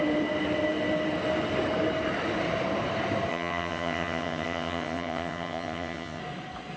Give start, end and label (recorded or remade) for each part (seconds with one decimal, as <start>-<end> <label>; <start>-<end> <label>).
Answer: 0.0-3.3 recorded; 3.3-6.2 remade; 6.2-6.8 recorded